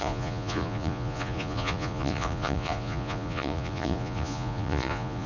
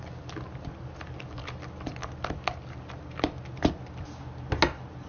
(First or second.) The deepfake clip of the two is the first